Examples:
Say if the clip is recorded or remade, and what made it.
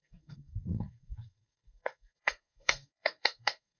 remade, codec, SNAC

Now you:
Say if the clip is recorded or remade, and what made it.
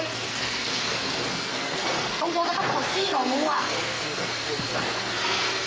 remade, codec, SNAC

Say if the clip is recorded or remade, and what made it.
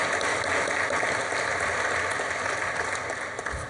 recorded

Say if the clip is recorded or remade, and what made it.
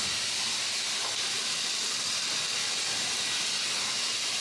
recorded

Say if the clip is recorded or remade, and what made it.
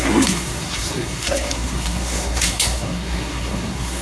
remade, codec, SNAC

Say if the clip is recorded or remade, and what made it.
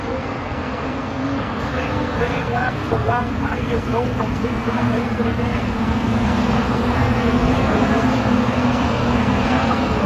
remade, codec, SNAC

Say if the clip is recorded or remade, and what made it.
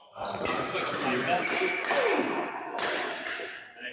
recorded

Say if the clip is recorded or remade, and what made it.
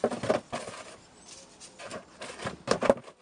recorded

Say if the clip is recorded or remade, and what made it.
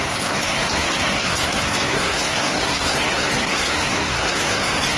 remade, codec, SNAC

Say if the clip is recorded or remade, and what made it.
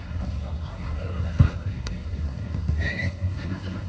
remade, codec, SNAC